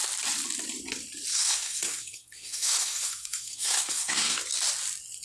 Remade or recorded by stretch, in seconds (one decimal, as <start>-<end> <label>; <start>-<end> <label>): 0.0-1.3 recorded; 1.3-4.4 remade; 4.4-5.2 recorded